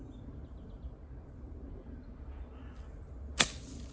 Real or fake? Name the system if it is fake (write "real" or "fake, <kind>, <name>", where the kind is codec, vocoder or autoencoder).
real